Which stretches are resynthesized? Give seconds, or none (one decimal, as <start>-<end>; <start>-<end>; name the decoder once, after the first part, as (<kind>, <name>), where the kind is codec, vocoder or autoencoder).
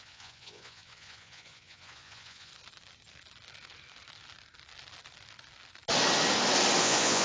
0.0-2.5 (vocoder, Vocos); 6.8-7.2